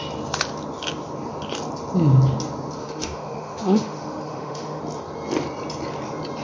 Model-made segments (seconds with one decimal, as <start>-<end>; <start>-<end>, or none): 2.8-4.8